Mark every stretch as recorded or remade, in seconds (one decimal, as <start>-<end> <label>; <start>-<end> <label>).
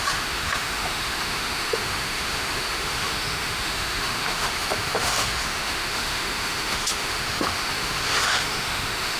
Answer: 0.0-9.2 remade